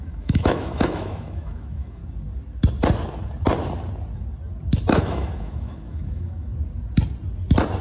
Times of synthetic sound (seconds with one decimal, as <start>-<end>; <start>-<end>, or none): 0.0-2.0; 4.9-6.5